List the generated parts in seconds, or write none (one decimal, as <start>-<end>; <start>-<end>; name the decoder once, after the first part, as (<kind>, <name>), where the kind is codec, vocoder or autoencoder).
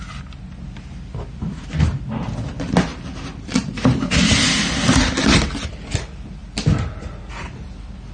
none